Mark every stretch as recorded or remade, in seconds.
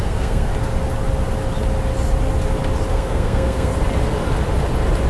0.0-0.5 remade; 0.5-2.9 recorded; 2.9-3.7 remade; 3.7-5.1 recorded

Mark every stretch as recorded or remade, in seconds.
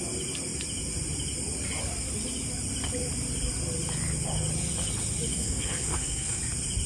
0.0-5.3 recorded; 5.3-6.4 remade; 6.4-6.9 recorded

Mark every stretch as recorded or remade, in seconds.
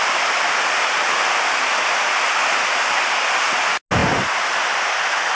0.0-5.4 recorded